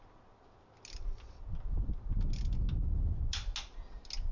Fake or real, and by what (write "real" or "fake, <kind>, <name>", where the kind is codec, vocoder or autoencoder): real